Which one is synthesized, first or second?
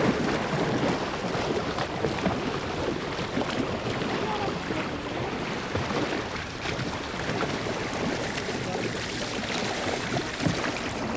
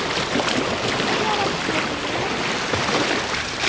first